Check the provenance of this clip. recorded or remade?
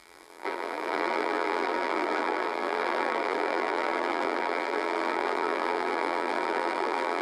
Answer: remade